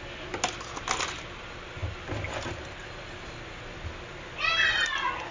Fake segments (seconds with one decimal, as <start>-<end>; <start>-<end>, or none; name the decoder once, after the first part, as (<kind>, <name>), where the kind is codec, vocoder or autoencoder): none

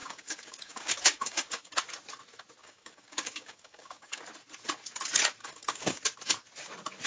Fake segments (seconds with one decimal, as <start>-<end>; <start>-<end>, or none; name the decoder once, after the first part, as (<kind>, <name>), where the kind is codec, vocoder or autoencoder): 0.0-1.7 (codec, DAC); 2.6-4.2; 5.4-6.0

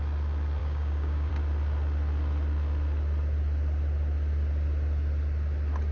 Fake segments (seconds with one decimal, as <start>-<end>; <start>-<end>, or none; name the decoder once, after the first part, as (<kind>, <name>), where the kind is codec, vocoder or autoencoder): 0.6-1.3 (codec, DAC)

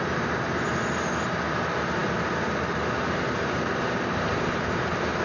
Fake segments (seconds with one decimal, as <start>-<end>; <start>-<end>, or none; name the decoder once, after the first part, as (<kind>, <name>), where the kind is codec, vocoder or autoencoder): none